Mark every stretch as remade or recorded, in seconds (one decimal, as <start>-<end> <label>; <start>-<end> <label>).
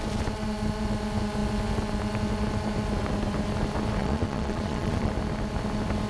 0.0-4.0 recorded; 4.0-5.1 remade; 5.1-6.1 recorded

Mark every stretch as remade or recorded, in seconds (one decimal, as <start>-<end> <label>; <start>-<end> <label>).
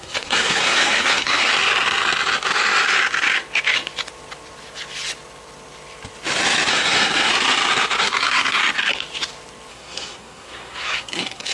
0.0-1.5 remade; 1.5-6.7 recorded; 6.7-7.3 remade; 7.3-8.0 recorded; 8.0-8.6 remade; 8.6-9.7 recorded; 9.7-11.5 remade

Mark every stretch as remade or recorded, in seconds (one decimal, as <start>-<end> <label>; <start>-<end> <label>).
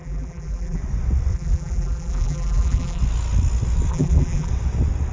0.0-0.8 remade; 0.8-1.3 recorded; 1.3-3.0 remade; 3.0-3.9 recorded; 3.9-4.5 remade; 4.5-5.1 recorded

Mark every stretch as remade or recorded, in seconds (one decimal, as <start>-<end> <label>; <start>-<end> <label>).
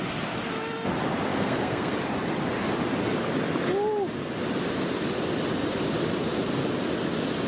0.0-1.3 recorded; 1.3-1.9 remade; 1.9-7.5 recorded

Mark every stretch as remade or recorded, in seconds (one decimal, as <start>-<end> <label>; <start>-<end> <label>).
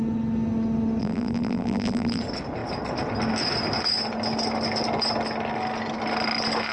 0.0-1.0 recorded; 1.0-2.2 remade; 2.2-6.7 recorded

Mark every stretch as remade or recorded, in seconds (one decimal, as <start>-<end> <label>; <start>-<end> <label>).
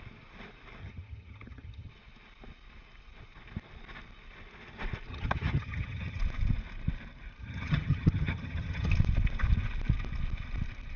0.0-0.8 recorded; 0.8-1.9 remade; 1.9-5.1 recorded; 5.1-6.2 remade; 6.2-7.4 recorded; 7.4-8.9 remade; 8.9-11.0 recorded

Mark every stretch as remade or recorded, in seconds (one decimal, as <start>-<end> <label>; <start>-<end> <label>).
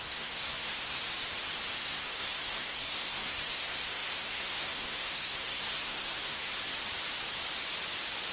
0.0-1.0 remade; 1.0-1.8 recorded; 1.8-6.5 remade; 6.5-8.3 recorded